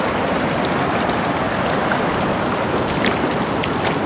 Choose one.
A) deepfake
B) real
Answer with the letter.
B